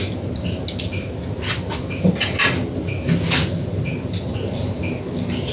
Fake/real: real